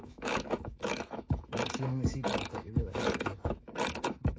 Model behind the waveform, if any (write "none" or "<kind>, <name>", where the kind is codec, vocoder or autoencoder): autoencoder, DAC-VAE